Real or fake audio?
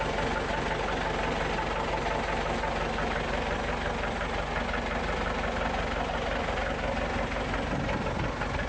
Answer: real